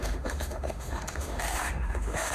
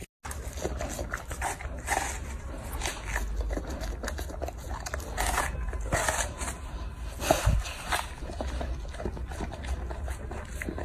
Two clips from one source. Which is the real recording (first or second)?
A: second